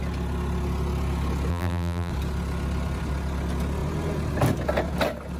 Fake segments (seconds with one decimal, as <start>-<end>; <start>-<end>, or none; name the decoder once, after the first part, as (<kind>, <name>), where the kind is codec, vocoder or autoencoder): 1.5-2.1 (vocoder, BigVGAN v2)